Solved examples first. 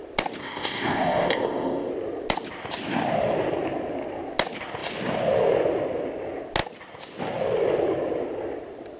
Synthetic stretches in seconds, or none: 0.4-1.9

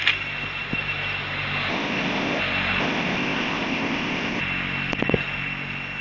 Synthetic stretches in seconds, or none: 1.7-2.4; 2.8-4.4

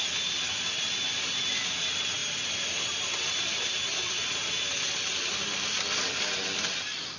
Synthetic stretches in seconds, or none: none

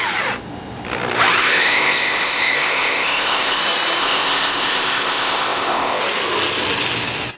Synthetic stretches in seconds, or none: 1.4-3.6; 4.0-6.0

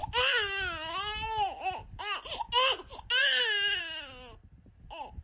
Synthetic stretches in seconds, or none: none

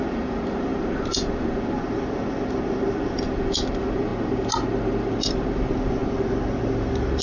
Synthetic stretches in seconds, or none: none